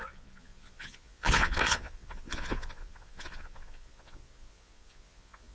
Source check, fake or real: fake